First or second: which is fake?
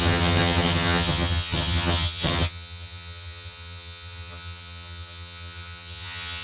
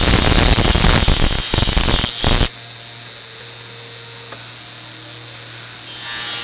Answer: first